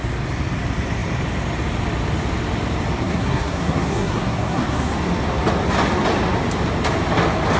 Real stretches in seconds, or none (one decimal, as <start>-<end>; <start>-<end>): 0.0-3.0; 4.9-7.6